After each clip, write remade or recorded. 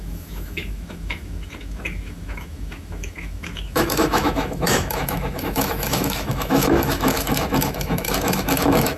remade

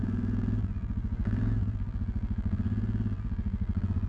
remade